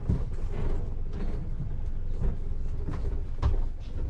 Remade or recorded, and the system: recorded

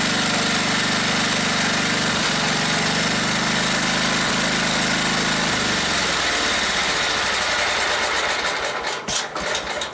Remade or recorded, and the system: recorded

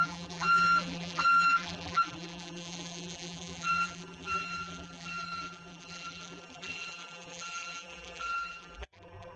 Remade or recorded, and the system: remade, vocoder, BigVGAN v2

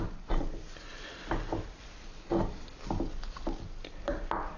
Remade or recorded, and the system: recorded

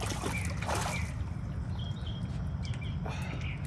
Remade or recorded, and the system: recorded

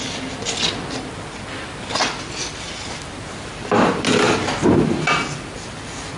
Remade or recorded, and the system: recorded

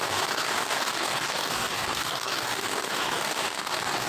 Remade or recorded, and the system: remade, codec, DAC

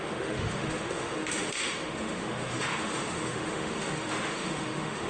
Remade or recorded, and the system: remade, autoencoder, DAC-VAE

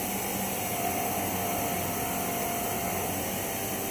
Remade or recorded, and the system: recorded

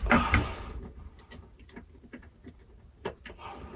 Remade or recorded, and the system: recorded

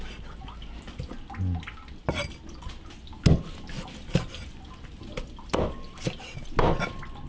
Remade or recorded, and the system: recorded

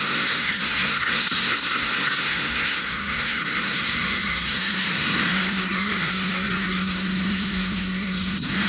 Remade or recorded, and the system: remade, codec, SNAC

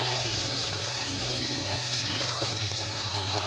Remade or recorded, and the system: remade, codec, SNAC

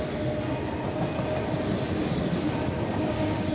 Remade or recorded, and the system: recorded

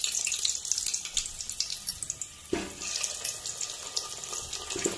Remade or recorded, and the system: recorded